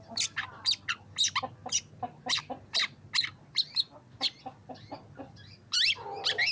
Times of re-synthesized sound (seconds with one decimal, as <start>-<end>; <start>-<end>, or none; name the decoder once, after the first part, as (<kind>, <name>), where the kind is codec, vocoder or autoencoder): none